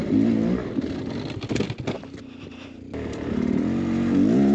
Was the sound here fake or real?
real